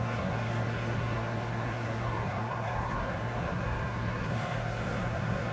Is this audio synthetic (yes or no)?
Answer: yes